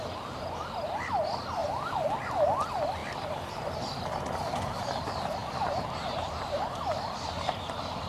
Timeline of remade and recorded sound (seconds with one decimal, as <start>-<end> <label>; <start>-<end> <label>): 0.0-1.6 recorded; 1.6-2.2 remade; 2.2-8.1 recorded